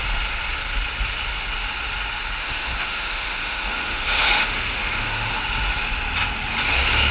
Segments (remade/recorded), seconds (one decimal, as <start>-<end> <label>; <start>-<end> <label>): 0.0-2.4 recorded; 2.4-5.4 remade; 5.4-7.1 recorded